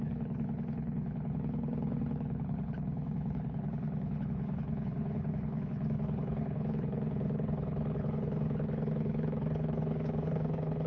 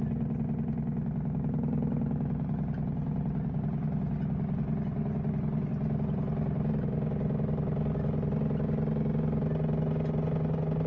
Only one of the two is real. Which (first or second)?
second